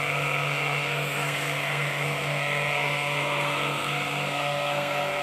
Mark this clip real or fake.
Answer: fake